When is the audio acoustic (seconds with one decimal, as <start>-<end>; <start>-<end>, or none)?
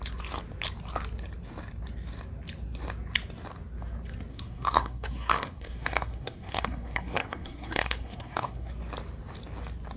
0.0-4.3; 8.7-10.0